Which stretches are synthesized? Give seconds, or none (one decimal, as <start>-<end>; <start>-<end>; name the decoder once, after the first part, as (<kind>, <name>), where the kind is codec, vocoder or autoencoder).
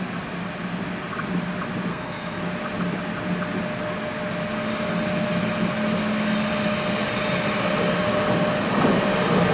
1.9-2.4 (codec, SNAC)